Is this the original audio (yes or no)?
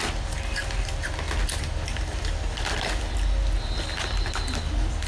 yes